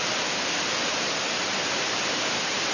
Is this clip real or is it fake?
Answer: real